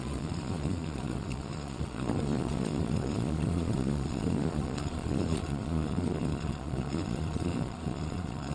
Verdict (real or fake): fake